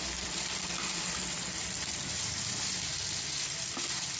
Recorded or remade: remade